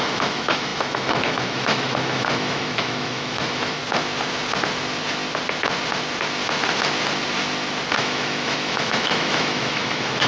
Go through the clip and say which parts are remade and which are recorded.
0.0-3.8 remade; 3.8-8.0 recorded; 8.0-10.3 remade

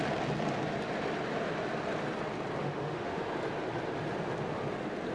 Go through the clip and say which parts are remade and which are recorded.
0.0-2.6 recorded; 2.6-3.2 remade; 3.2-5.1 recorded

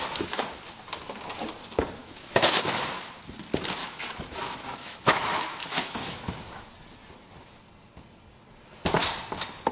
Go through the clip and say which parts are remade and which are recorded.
0.0-2.0 recorded; 2.0-2.8 remade; 2.8-3.8 recorded; 3.8-6.7 remade; 6.7-9.7 recorded

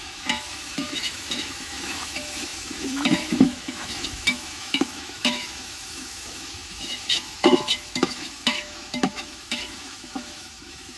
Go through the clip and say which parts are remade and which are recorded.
0.0-11.0 remade

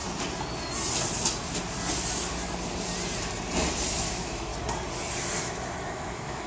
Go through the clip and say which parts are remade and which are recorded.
0.0-3.9 recorded; 3.9-4.5 remade; 4.5-5.4 recorded; 5.4-6.5 remade

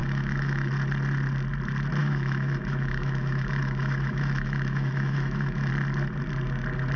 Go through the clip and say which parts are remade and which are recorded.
0.0-0.7 remade; 0.7-2.0 recorded; 2.0-5.7 remade; 5.7-7.0 recorded